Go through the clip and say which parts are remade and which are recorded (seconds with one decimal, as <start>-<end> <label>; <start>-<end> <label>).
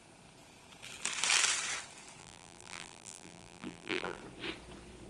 0.0-2.2 recorded; 2.2-4.2 remade; 4.2-5.1 recorded